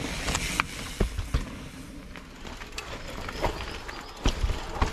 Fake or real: real